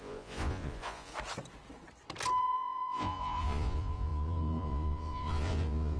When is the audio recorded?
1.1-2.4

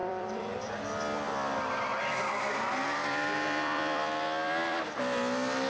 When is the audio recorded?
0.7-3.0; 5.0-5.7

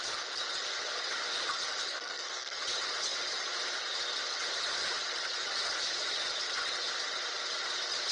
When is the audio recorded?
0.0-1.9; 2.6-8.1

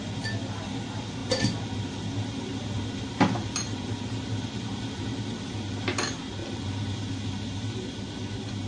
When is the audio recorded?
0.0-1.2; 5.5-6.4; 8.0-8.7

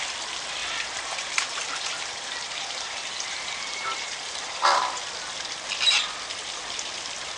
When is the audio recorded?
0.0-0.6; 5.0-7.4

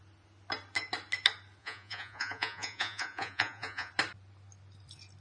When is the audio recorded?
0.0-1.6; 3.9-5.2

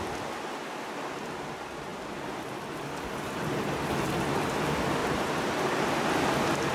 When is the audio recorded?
0.0-6.7